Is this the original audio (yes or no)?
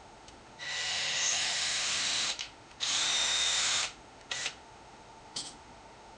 no